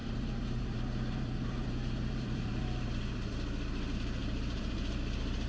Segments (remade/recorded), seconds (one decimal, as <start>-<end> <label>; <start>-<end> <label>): 0.0-3.3 remade; 3.3-4.2 recorded; 4.2-5.5 remade